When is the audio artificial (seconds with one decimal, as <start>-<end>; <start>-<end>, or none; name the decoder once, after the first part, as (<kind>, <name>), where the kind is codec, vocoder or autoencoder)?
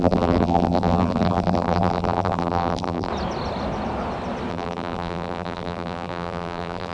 0.0-3.1 (vocoder, BigVGAN v2); 4.5-6.9